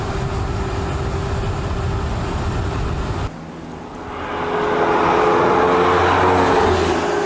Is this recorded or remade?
recorded